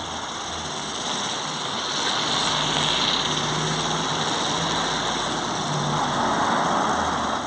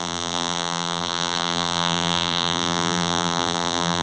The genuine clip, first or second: first